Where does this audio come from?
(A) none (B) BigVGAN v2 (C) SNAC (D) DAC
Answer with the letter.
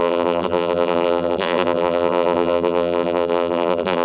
B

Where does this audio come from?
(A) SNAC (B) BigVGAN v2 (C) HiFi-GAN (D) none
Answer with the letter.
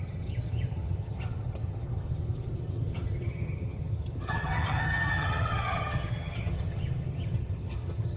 C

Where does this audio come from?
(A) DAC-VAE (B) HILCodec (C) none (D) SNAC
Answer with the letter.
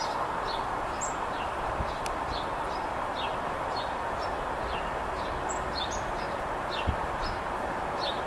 C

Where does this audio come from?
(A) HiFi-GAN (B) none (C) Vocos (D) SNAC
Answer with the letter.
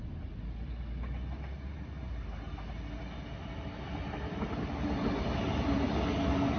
B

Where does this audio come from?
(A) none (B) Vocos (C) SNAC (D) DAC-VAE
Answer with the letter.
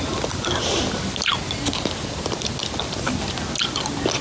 A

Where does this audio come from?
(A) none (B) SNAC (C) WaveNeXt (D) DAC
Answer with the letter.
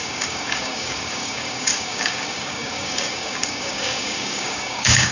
D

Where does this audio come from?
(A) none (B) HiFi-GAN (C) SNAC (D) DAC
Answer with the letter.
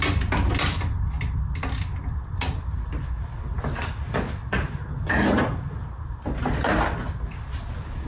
A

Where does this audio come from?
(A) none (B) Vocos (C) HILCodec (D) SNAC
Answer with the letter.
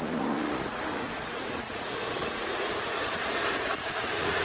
B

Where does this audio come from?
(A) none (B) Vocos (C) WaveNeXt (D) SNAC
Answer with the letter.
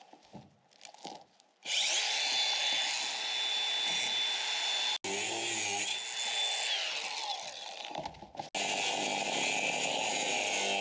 A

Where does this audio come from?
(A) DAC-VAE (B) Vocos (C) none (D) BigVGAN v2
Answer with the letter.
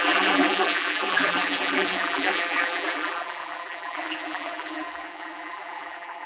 D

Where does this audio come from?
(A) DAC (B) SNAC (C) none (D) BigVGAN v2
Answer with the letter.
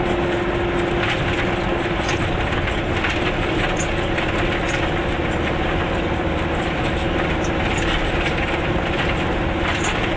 C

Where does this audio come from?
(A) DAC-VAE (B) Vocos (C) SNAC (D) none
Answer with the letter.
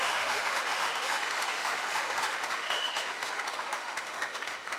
A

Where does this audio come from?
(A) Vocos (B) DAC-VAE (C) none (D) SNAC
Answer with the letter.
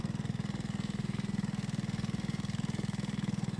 D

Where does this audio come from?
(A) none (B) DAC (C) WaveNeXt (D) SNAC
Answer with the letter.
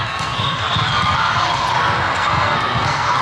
D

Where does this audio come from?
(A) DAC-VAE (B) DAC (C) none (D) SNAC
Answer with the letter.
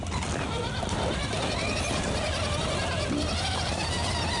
C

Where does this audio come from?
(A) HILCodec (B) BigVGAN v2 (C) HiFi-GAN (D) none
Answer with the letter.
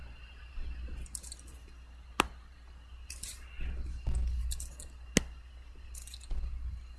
D